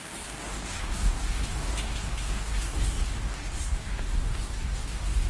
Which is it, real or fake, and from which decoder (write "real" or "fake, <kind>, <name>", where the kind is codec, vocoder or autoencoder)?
fake, codec, DAC